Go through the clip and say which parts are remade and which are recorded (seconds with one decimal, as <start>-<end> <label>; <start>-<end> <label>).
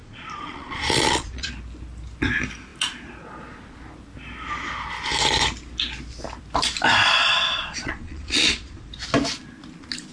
0.0-1.5 remade; 1.5-7.2 recorded; 7.2-8.9 remade; 8.9-10.1 recorded